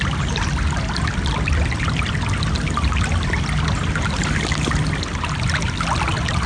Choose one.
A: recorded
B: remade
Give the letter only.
A